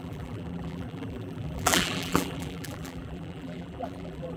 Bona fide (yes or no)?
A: no